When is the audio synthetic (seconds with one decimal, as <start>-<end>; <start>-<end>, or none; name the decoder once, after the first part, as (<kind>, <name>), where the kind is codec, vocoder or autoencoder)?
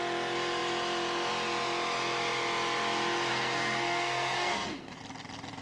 3.3-5.0 (codec, SNAC)